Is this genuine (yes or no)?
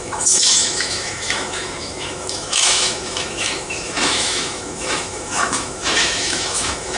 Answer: no